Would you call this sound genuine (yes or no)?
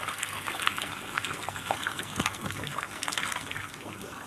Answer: no